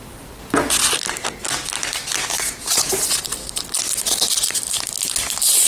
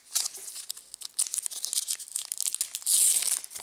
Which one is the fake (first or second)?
first